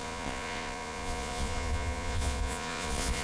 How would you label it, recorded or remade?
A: remade